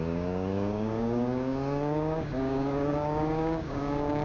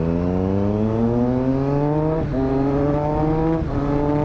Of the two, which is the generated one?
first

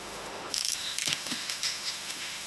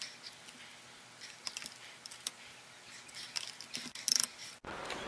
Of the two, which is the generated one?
first